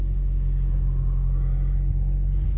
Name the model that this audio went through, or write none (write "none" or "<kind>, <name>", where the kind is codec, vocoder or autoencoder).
none